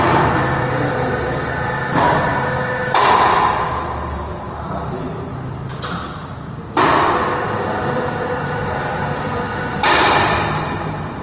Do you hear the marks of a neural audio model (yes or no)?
yes